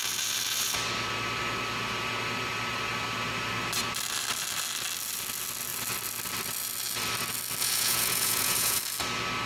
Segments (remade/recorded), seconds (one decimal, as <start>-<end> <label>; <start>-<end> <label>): 0.0-7.6 recorded; 7.6-8.8 remade; 8.8-9.5 recorded